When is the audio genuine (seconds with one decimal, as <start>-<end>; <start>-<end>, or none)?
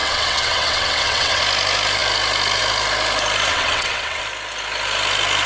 1.4-3.5; 4.2-5.5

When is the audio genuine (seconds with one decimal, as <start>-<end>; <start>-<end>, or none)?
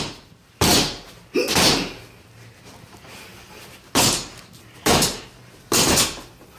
0.0-6.6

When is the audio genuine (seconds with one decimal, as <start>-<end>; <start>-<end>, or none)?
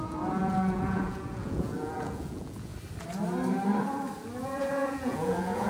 2.7-4.4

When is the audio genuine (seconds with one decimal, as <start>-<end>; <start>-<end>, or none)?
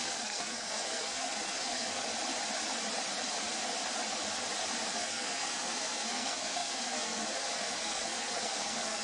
2.1-4.9